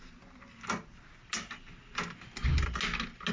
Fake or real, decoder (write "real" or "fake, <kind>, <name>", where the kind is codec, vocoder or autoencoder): real